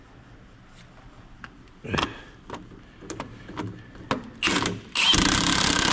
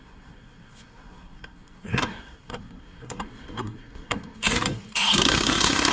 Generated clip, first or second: second